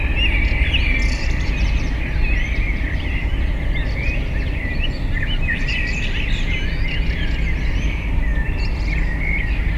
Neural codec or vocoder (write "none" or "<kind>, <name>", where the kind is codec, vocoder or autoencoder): none